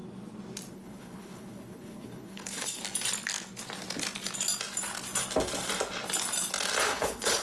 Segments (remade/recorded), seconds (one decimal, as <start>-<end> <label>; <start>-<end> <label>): 0.0-0.7 recorded; 0.7-2.8 remade; 2.8-6.8 recorded; 6.8-7.4 remade

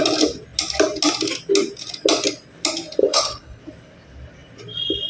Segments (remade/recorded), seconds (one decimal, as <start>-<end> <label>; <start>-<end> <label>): 0.0-3.0 recorded; 3.0-3.6 remade; 3.6-5.1 recorded